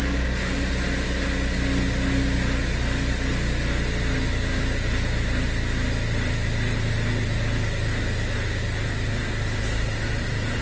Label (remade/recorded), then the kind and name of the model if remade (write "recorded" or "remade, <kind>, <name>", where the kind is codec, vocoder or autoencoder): recorded